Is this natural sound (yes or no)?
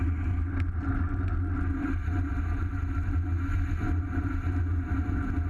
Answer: yes